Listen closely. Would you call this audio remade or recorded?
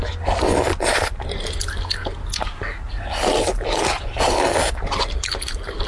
recorded